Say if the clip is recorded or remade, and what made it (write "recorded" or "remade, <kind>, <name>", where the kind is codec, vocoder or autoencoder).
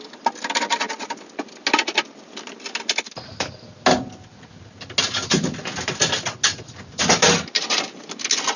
recorded